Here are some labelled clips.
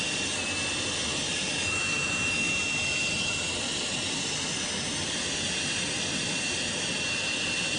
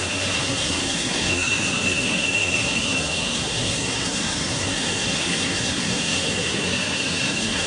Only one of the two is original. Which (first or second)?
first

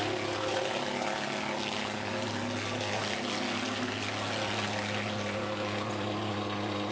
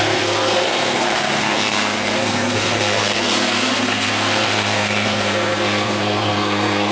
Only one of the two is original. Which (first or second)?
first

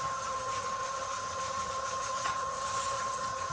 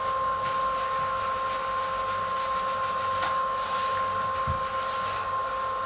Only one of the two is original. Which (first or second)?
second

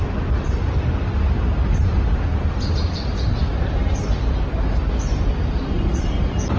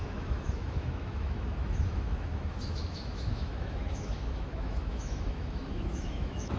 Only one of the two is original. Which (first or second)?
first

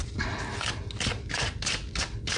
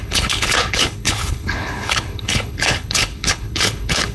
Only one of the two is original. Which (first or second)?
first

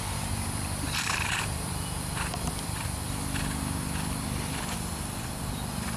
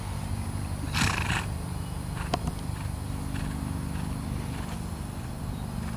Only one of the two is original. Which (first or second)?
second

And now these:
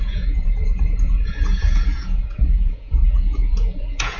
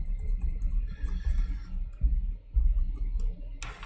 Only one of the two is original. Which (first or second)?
second